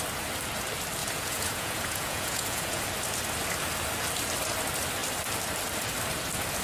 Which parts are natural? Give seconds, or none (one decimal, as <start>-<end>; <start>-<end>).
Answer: 0.0-1.0; 2.8-6.6